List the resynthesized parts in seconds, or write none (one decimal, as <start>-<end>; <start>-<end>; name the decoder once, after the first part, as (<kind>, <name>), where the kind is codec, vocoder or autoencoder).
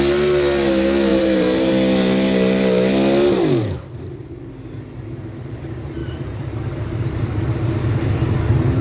1.1-1.7 (vocoder, BigVGAN v2); 6.0-7.2